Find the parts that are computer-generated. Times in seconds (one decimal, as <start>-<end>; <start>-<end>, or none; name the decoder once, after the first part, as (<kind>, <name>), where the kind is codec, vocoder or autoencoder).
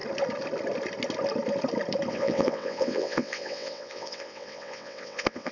2.1-5.5 (vocoder, WaveNeXt)